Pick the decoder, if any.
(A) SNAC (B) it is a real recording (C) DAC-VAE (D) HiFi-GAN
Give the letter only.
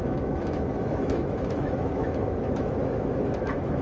C